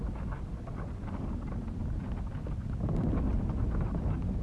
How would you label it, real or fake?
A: real